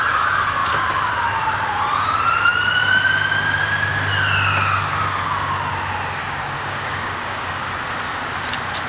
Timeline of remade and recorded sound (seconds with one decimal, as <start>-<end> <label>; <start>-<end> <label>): 0.0-6.2 recorded; 6.2-7.7 remade; 7.7-8.9 recorded